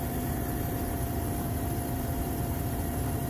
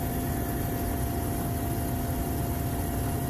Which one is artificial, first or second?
first